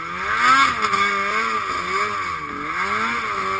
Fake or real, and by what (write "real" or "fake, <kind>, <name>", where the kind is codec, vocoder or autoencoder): real